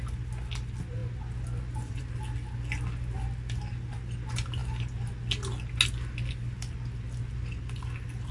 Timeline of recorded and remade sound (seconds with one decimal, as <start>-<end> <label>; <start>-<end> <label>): 0.0-8.3 recorded